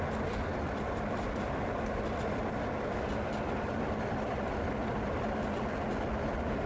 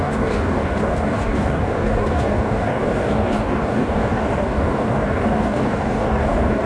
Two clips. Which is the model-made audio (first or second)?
second